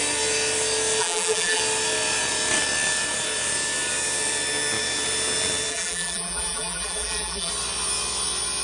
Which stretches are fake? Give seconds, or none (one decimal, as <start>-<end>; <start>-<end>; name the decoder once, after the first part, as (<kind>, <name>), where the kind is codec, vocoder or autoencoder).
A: 1.0-1.6 (vocoder, BigVGAN v2); 5.7-7.5